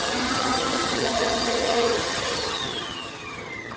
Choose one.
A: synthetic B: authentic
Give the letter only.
A